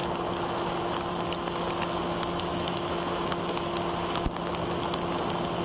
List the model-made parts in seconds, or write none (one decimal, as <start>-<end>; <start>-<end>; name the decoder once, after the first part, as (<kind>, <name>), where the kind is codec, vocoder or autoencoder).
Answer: 2.5-3.5 (autoencoder, DAC-VAE)